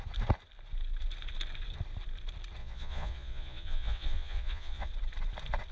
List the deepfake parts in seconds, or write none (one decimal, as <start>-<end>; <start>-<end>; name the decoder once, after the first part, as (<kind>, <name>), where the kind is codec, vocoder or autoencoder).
2.6-4.9 (vocoder, Vocos)